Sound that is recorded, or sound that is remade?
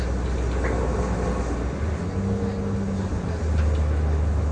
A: recorded